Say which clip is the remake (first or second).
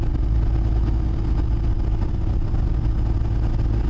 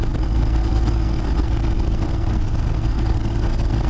second